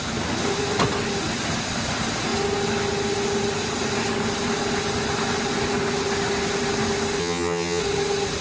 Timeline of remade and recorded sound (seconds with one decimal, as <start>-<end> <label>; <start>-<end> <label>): 0.0-7.2 recorded; 7.2-7.8 remade; 7.8-8.4 recorded